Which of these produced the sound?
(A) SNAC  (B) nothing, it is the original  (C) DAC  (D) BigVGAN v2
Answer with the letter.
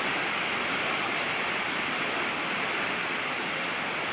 B